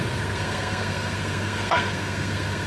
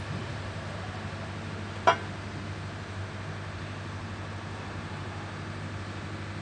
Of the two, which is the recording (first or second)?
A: second